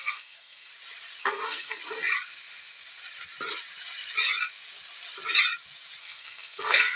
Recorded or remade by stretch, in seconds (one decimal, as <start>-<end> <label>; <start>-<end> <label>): 0.0-0.7 remade; 0.7-1.2 recorded; 1.2-1.8 remade; 1.8-6.0 recorded; 6.0-7.0 remade